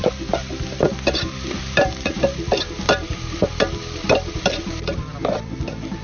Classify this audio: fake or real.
fake